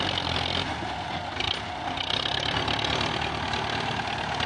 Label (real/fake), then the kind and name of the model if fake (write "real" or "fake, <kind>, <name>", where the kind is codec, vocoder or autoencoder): real